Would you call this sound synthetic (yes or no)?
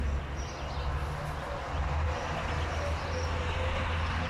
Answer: no